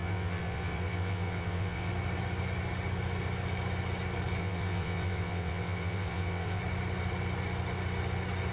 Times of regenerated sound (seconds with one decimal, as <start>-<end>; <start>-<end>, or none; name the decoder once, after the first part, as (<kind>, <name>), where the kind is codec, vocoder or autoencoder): 0.0-1.9 (vocoder, WaveNeXt); 4.4-6.6